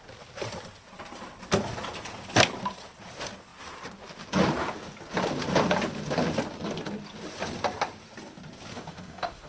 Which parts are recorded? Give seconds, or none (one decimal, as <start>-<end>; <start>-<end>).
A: 0.0-8.7